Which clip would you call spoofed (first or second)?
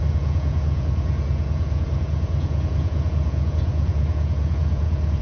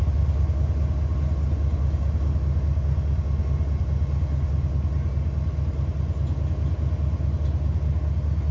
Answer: first